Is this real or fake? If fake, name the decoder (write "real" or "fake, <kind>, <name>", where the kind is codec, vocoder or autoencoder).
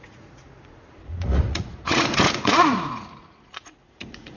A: fake, vocoder, Vocos